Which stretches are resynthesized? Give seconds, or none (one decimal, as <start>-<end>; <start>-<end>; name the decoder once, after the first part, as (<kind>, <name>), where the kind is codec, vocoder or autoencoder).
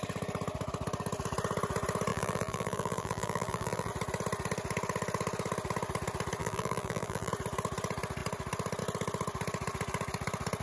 2.1-3.9 (vocoder, BigVGAN v2); 6.4-7.3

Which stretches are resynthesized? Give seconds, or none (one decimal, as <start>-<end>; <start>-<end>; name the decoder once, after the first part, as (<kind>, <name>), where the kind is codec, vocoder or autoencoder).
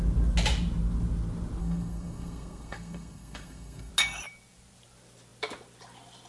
1.6-3.9 (codec, SNAC)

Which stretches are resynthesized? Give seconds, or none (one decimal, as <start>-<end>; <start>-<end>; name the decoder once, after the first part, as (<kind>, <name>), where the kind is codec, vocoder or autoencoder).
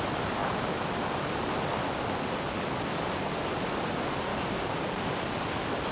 4.3-4.9 (codec, DAC)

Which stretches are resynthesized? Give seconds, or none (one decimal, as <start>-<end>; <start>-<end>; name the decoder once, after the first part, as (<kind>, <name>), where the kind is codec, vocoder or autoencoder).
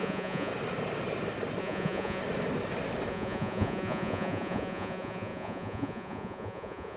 0.0-0.5 (vocoder, Vocos); 1.6-2.2; 3.1-7.0